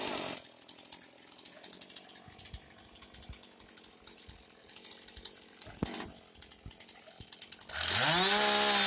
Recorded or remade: recorded